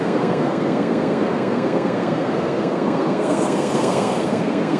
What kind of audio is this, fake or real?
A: fake